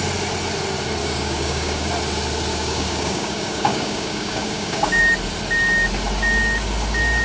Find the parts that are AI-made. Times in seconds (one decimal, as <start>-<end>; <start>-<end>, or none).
1.0-1.9; 2.5-5.0